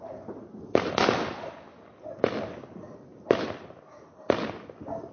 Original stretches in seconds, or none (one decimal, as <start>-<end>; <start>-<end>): 0.0-5.1